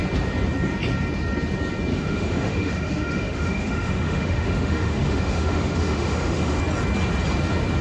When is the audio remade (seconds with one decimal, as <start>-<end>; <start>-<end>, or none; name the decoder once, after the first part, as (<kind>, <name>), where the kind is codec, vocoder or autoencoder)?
1.9-6.6 (autoencoder, DAC-VAE)